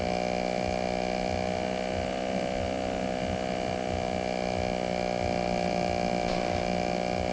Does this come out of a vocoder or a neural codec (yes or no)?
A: no